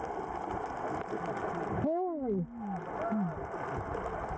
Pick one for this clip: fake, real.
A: real